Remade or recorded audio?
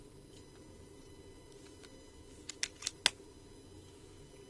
recorded